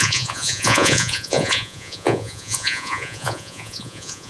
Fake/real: fake